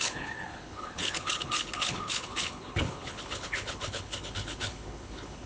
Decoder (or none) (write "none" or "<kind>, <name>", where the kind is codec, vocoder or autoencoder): codec, HILCodec